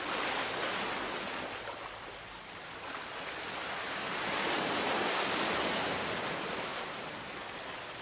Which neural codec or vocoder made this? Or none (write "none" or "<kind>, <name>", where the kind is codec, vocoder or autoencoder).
none